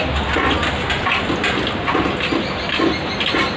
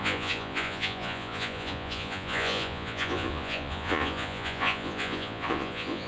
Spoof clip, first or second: second